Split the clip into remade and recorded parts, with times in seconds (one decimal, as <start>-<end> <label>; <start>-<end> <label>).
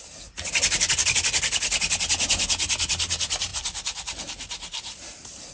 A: 0.0-3.5 recorded; 3.5-5.5 remade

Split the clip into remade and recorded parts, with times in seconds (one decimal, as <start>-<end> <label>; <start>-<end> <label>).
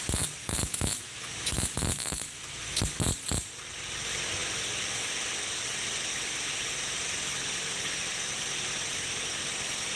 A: 0.0-0.4 recorded; 0.4-2.8 remade; 2.8-10.0 recorded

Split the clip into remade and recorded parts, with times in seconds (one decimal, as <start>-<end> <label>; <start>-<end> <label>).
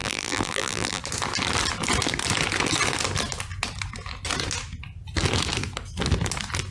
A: 0.0-1.0 remade; 1.0-6.7 recorded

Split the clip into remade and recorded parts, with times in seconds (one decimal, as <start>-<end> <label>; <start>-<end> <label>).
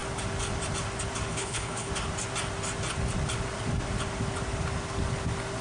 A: 0.0-1.3 recorded; 1.3-1.9 remade; 1.9-5.6 recorded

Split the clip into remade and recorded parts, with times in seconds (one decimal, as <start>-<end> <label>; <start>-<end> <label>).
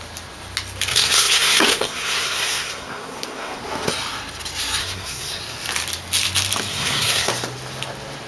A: 0.0-0.9 recorded; 0.9-3.6 remade; 3.6-4.8 recorded; 4.8-5.4 remade; 5.4-6.7 recorded; 6.7-7.3 remade; 7.3-8.3 recorded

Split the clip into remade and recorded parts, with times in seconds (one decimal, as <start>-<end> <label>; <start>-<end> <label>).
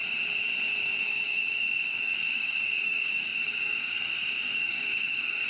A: 0.0-1.0 recorded; 1.0-5.5 remade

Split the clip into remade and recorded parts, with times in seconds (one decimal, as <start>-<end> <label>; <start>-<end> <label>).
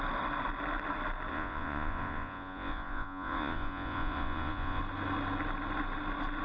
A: 0.0-1.3 recorded; 1.3-4.8 remade; 4.8-6.4 recorded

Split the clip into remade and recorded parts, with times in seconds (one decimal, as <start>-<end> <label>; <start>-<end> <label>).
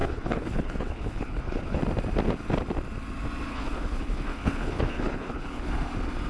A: 0.0-1.8 remade; 1.8-3.5 recorded; 3.5-5.7 remade; 5.7-6.3 recorded